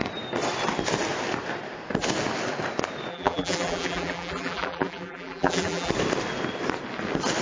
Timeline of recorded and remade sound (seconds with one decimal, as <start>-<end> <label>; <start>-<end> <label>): 0.0-3.1 recorded; 3.1-5.9 remade; 5.9-7.4 recorded